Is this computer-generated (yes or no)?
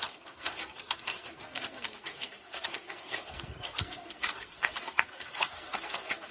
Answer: yes